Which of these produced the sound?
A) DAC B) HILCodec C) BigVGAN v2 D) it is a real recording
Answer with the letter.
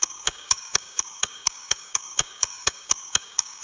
A